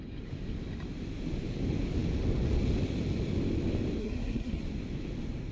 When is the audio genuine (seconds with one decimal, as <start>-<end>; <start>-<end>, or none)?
0.0-4.0; 4.6-5.5